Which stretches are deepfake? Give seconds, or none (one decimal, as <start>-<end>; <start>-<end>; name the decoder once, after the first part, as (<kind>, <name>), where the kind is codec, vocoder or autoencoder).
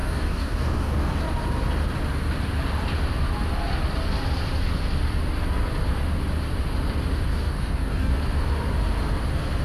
0.0-1.2 (codec, DAC); 7.3-8.1